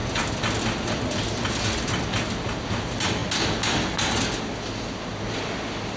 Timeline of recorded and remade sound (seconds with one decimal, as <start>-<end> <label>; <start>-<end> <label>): 0.0-6.0 recorded